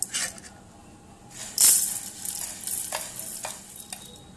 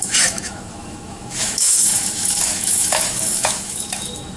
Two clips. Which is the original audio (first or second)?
first